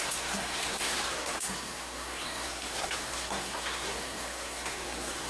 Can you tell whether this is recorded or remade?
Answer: remade